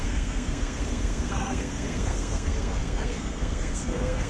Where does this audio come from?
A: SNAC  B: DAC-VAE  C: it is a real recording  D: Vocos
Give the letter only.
A